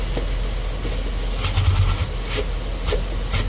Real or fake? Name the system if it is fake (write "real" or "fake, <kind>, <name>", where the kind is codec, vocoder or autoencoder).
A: real